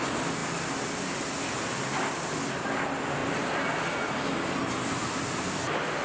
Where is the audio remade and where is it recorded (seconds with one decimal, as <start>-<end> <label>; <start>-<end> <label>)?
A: 0.0-6.0 recorded